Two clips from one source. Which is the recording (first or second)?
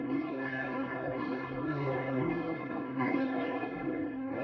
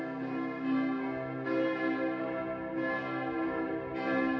second